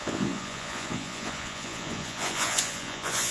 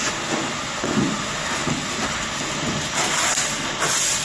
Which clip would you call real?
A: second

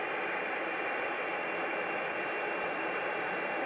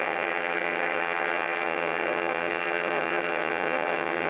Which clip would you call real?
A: first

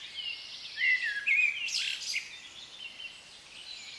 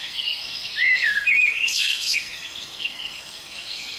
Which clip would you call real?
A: first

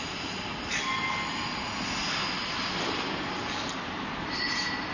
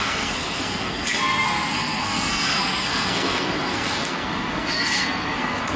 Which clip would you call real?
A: first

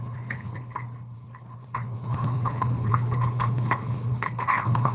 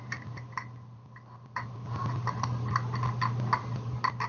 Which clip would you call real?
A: second